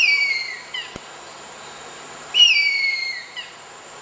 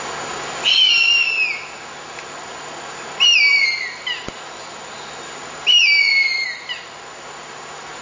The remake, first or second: first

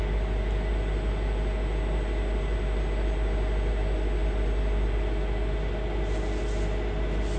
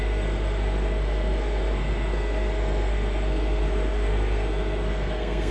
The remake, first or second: second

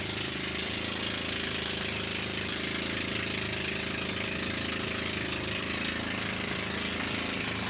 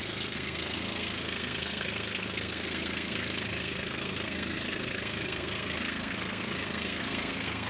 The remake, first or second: second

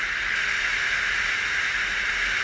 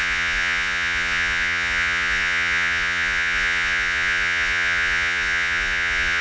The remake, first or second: second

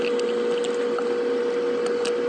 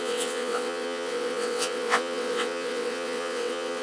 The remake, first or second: second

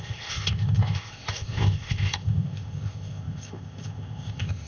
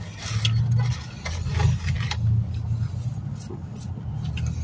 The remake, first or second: first